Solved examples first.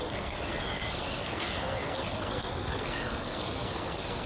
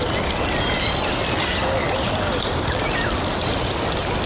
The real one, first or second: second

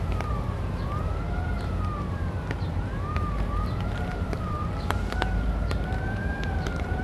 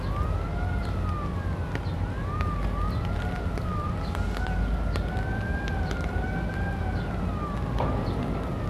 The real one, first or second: second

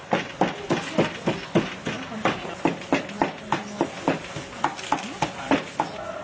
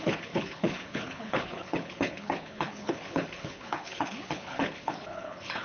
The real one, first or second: first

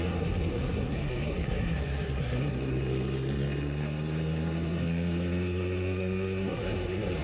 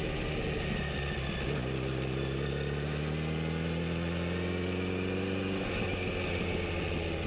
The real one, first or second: second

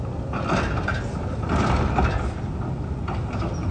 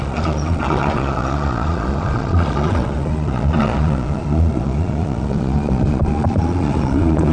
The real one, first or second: first